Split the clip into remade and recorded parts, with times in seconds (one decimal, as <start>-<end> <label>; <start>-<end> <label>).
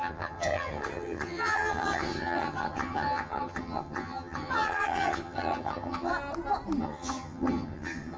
0.0-6.1 remade; 6.1-6.8 recorded; 6.8-8.2 remade